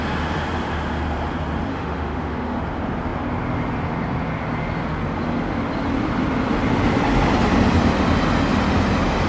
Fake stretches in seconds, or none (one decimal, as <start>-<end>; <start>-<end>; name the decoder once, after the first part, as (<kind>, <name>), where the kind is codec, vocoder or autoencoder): 1.7-2.6 (autoencoder, DAC-VAE)